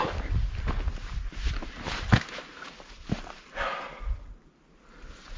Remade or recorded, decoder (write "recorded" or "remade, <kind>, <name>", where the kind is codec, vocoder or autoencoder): recorded